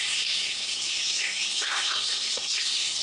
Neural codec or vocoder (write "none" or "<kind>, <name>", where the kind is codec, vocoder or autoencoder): codec, SNAC